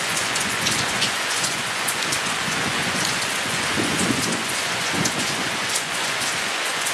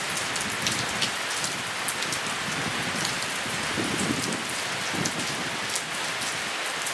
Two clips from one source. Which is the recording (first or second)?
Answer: second